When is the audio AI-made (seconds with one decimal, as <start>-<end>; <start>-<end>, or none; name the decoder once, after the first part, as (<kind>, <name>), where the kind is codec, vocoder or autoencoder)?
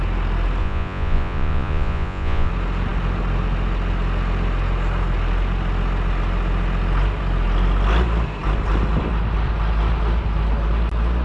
0.6-2.5 (vocoder, Vocos)